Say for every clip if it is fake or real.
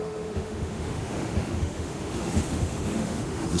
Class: fake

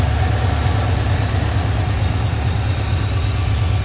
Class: real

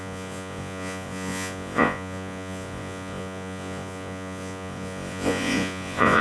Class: fake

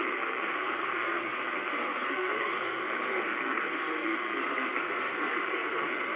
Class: fake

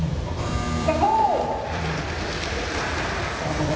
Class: fake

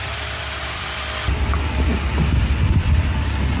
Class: fake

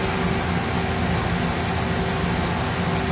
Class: real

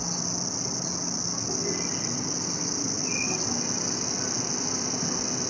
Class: real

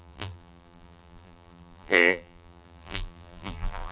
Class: fake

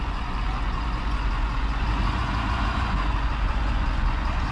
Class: fake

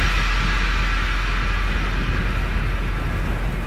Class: real